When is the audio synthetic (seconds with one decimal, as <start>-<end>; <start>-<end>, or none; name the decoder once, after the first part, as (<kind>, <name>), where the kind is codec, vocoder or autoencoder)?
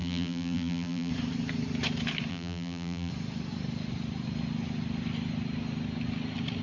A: 0.0-1.1 (vocoder, BigVGAN v2); 2.3-3.1